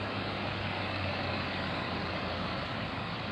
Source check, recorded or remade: remade